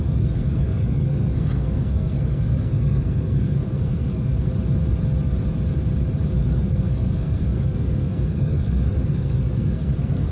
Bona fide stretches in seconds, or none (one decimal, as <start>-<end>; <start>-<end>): 4.5-6.4